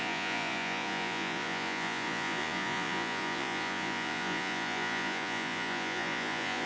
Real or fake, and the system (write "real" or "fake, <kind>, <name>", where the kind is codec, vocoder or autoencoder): fake, vocoder, Vocos